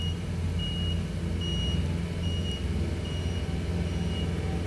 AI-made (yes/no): no